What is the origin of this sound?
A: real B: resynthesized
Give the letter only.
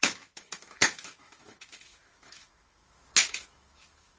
B